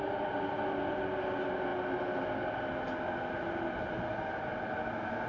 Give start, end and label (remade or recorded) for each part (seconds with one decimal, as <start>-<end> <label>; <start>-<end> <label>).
0.0-5.3 recorded